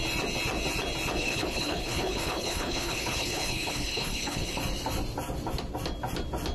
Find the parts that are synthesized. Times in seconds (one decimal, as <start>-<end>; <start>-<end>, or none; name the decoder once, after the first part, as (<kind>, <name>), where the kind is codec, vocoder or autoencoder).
1.2-4.6 (codec, HILCodec)

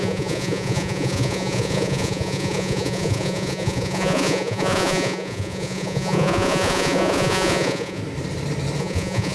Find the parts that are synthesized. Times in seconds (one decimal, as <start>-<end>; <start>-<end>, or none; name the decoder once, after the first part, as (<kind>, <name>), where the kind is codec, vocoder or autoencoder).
0.0-8.0 (vocoder, Vocos); 8.8-9.3

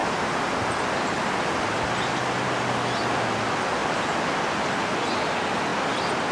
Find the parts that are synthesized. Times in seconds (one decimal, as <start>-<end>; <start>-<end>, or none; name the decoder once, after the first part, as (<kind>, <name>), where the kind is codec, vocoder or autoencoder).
5.7-6.3 (vocoder, BigVGAN v2)

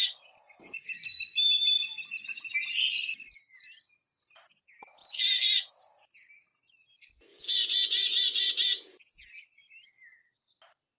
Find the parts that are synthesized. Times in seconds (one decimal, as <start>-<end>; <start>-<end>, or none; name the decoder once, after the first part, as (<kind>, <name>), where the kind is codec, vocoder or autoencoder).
5.0-5.7 (vocoder, Vocos); 7.3-9.4